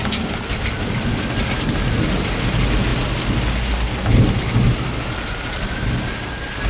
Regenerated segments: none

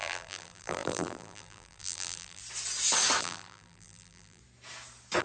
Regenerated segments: 0.0-2.4; 3.2-4.4